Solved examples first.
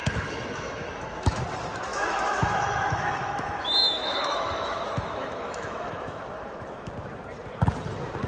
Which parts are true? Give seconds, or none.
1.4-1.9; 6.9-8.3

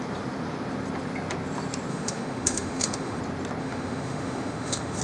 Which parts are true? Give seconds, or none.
0.0-1.9; 3.2-3.6